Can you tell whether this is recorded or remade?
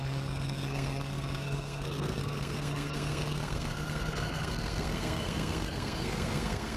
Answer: remade